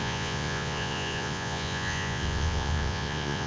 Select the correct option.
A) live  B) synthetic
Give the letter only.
B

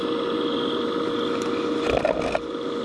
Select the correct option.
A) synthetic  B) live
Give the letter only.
B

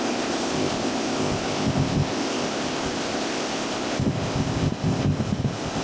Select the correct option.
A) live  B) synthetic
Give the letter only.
B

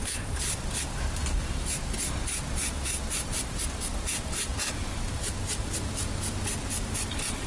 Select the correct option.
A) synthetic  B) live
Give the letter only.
B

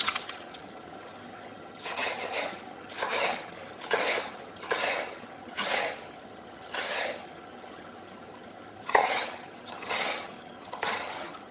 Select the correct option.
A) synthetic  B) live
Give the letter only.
A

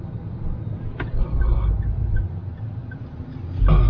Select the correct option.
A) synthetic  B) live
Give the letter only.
B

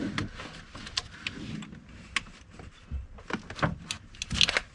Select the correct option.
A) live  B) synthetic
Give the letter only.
A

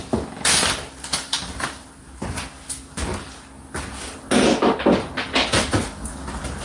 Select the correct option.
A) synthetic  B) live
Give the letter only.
B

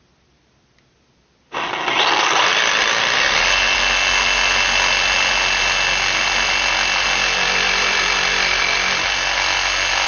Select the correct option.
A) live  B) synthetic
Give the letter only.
A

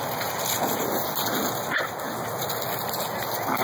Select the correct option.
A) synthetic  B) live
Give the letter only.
B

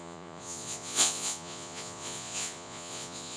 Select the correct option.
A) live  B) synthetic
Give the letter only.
B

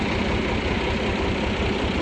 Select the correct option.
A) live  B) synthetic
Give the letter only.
A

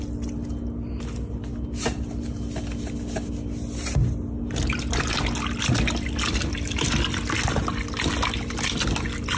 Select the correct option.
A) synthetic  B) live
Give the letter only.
B